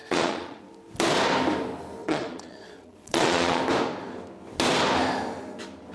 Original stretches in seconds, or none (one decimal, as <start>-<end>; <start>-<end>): 0.6-2.0; 3.6-5.9